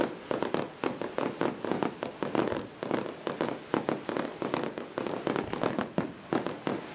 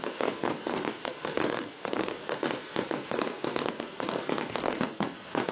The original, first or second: first